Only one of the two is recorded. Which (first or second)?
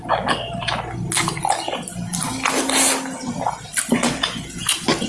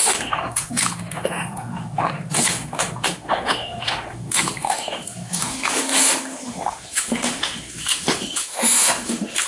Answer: first